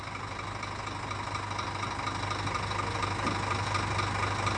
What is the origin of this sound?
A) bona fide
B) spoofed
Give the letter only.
A